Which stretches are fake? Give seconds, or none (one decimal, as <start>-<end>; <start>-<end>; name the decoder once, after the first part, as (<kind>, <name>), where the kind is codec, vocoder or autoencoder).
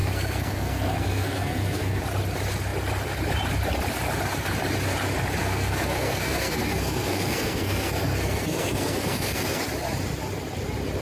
0.0-2.0 (codec, SNAC); 5.4-9.6